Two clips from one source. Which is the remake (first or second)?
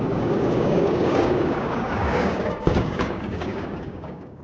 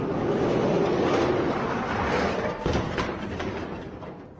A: first